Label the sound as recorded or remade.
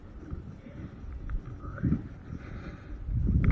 recorded